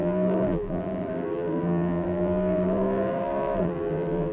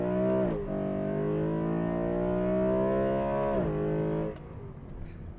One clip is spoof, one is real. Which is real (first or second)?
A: second